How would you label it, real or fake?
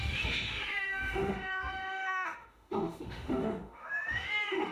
fake